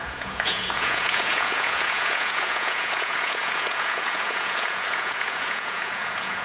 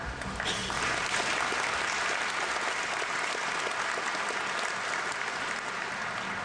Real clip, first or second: second